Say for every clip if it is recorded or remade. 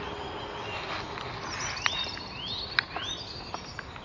recorded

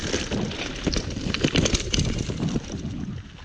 recorded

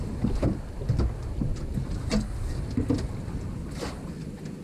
recorded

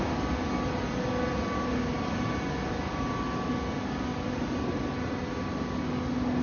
recorded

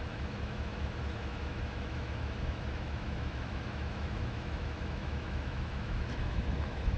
remade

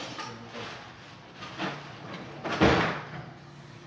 recorded